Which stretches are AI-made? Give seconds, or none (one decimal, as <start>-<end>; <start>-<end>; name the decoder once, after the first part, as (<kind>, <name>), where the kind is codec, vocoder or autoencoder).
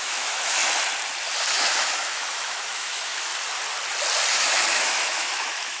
0.0-0.6 (autoencoder, DAC-VAE); 1.5-3.3; 4.3-5.8